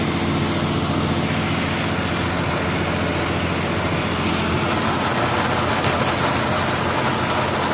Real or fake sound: real